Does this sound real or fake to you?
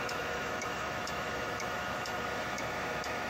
fake